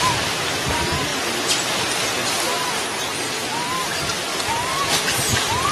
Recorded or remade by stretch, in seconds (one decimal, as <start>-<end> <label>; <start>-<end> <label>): 0.0-5.7 recorded